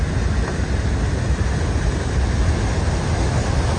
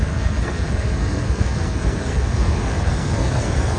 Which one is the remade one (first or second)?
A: second